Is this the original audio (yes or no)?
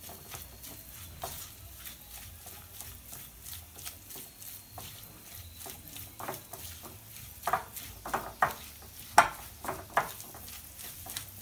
yes